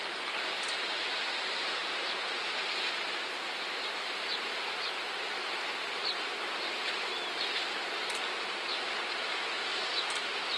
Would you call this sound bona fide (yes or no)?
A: no